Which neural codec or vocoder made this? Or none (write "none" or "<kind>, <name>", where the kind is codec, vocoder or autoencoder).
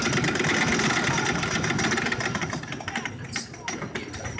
none